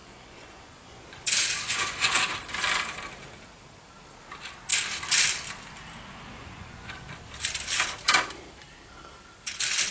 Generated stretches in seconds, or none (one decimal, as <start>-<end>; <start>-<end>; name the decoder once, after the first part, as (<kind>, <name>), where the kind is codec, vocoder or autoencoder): 0.0-2.2 (vocoder, Vocos); 6.4-7.2